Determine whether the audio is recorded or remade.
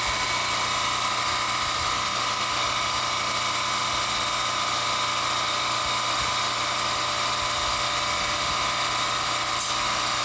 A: recorded